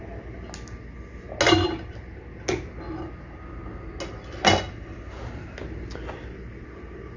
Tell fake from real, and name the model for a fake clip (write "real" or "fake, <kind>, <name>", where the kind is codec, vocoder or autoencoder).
real